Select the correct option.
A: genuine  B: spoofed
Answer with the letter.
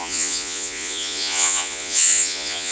B